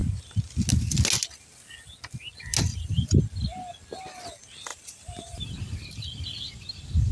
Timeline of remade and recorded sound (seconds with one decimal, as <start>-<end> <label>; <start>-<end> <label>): 0.0-2.7 recorded; 2.7-3.2 remade; 3.2-4.7 recorded; 4.7-7.1 remade